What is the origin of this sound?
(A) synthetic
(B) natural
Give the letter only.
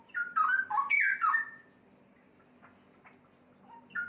B